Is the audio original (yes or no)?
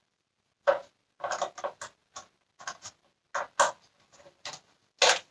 yes